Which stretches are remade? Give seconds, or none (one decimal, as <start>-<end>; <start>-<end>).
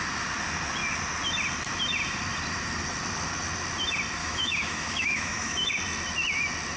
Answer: 4.2-5.7